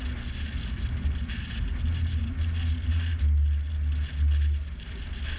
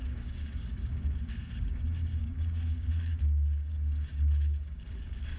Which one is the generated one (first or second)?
second